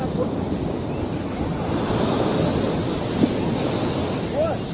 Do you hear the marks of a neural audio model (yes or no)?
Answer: no